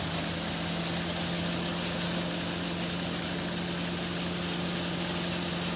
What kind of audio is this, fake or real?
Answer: real